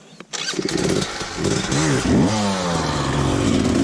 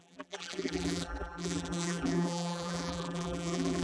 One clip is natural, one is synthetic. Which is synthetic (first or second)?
second